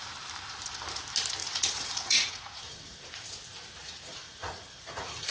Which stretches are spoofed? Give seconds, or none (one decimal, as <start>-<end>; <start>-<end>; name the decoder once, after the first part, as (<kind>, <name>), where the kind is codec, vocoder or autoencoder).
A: 1.4-3.1 (vocoder, Vocos); 3.8-5.3